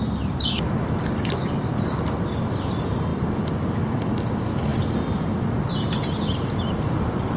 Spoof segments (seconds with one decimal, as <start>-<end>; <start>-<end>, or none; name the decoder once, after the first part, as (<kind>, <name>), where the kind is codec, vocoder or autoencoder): none